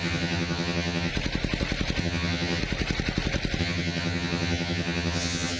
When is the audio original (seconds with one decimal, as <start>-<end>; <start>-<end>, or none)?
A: 1.1-2.0; 2.6-3.6